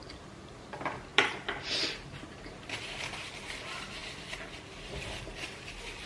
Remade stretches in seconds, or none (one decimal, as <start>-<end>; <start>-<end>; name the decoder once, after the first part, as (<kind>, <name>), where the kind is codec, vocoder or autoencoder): none